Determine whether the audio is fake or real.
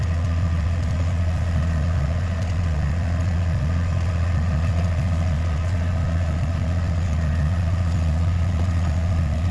fake